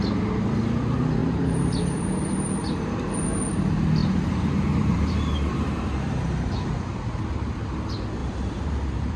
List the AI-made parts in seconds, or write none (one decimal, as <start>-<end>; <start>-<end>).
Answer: 1.2-2.9; 4.0-6.5; 8.2-9.2